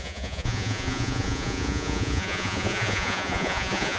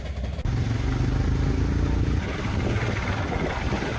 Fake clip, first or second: first